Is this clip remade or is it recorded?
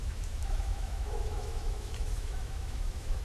remade